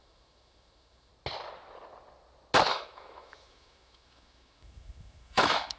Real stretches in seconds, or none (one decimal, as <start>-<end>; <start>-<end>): 1.1-2.7